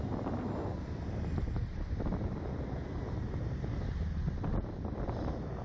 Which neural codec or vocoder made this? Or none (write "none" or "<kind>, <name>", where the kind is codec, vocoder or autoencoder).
none